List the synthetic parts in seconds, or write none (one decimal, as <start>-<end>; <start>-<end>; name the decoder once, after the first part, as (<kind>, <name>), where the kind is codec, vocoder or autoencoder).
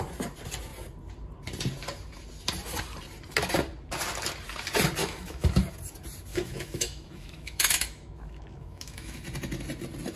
5.0-5.6 (autoencoder, DAC-VAE); 6.3-9.2